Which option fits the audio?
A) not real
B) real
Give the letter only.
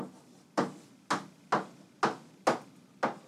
B